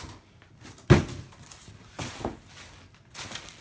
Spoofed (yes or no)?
no